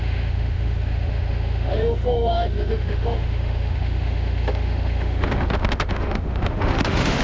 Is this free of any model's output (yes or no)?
no